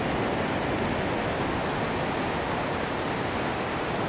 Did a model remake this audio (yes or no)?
no